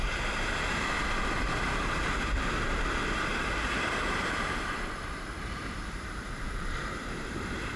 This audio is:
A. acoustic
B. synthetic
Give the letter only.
B